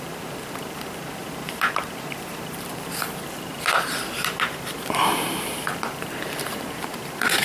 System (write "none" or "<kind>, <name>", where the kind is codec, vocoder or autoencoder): vocoder, BigVGAN v2